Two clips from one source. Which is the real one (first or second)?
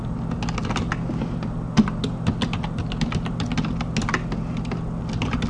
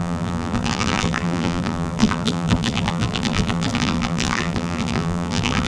first